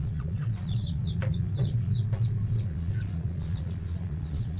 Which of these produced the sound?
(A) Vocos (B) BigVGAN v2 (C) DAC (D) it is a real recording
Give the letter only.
A